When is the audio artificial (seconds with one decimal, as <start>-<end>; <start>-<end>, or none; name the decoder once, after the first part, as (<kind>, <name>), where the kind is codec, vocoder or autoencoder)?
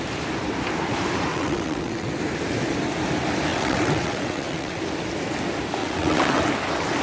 1.3-2.1 (vocoder, WaveNeXt); 3.5-4.8; 5.8-6.4